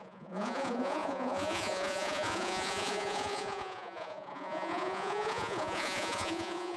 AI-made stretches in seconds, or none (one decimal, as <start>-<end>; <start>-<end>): 0.0-6.8